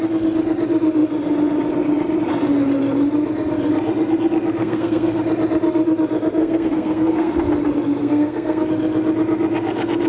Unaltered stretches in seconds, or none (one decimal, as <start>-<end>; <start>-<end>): 0.0-4.6; 5.2-6.4; 7.3-8.0; 8.7-10.1